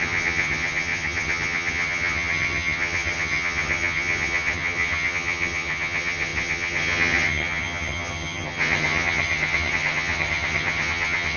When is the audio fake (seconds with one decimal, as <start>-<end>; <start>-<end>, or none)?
0.0-11.4